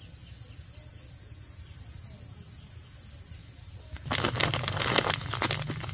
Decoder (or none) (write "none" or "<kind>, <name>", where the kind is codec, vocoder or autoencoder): none